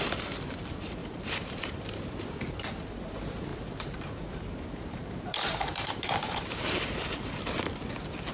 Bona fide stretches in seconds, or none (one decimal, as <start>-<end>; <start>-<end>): 0.0-1.0; 1.8-3.5; 7.4-8.3

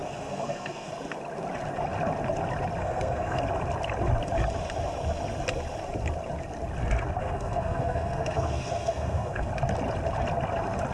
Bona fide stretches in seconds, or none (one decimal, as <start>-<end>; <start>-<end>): 0.9-2.8; 3.4-7.2; 9.5-10.9

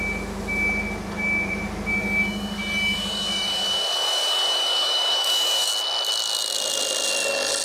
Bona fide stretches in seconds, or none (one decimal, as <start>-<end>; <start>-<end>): 0.0-1.9; 5.7-7.6